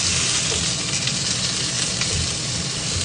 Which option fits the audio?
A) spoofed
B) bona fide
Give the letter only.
B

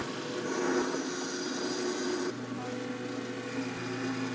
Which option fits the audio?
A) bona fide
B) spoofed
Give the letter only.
A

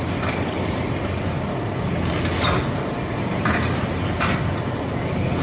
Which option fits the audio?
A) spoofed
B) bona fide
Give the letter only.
B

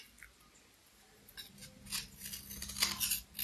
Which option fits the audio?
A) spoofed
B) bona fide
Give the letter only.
B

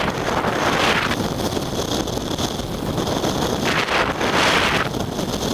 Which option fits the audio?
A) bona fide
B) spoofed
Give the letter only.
A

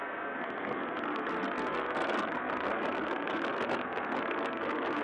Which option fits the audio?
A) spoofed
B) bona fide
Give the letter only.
A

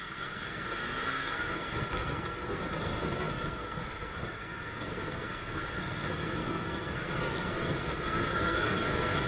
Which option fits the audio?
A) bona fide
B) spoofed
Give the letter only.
B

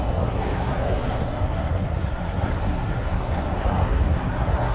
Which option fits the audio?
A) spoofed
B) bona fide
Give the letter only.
A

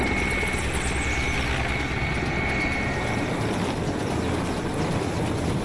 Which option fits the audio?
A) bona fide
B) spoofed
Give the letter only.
A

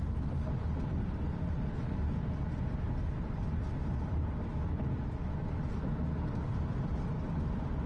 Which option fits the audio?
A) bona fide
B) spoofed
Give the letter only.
A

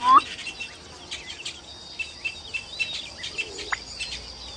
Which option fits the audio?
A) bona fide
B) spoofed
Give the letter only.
A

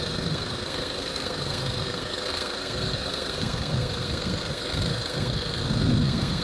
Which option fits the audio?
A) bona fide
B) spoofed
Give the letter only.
B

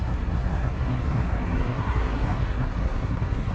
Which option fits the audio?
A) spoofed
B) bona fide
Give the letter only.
A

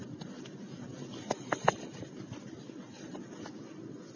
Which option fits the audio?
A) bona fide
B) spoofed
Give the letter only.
A